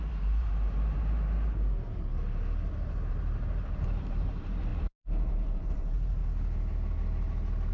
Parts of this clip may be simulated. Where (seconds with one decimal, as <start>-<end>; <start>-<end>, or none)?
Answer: 0.0-2.1; 3.1-6.2